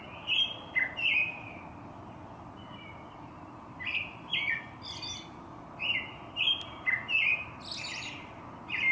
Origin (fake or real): real